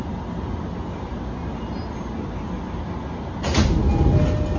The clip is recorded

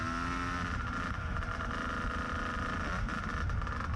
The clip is recorded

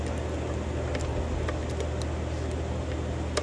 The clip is recorded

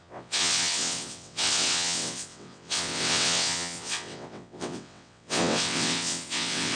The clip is remade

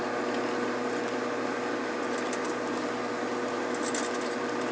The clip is recorded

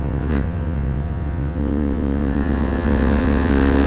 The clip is remade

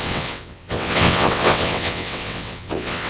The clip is remade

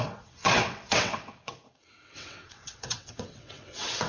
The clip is remade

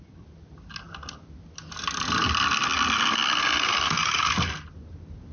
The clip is recorded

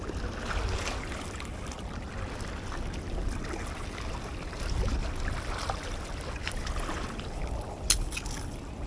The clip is recorded